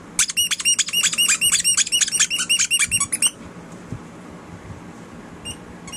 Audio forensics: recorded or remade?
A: recorded